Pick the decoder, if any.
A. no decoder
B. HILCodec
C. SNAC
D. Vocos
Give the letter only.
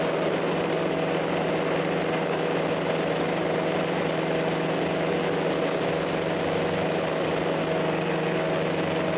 A